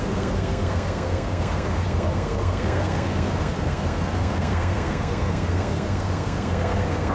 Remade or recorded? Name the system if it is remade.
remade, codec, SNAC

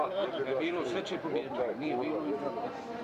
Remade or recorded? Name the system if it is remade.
remade, vocoder, BigVGAN v2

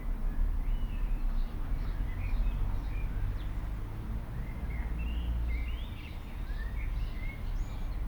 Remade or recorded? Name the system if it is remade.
recorded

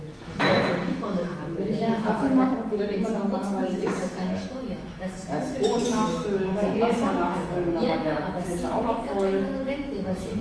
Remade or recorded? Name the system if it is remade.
remade, autoencoder, DAC-VAE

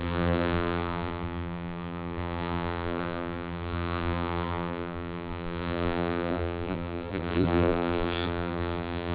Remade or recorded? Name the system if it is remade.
remade, vocoder, BigVGAN v2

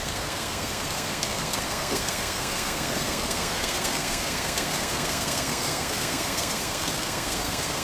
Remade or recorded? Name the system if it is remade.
remade, codec, SNAC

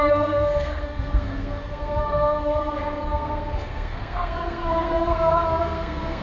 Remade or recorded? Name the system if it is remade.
remade, codec, SNAC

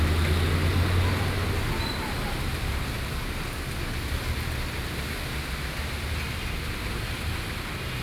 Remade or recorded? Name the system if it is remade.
recorded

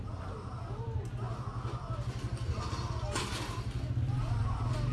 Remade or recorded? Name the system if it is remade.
recorded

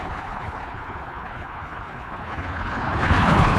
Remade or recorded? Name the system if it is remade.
remade, codec, HILCodec